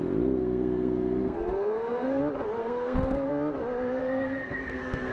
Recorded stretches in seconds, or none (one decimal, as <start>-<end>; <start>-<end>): 0.0-0.4; 2.2-2.6; 3.3-4.0